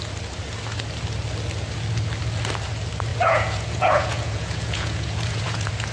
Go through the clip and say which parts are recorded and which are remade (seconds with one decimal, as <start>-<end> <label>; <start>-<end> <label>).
0.0-3.1 recorded; 3.1-5.9 remade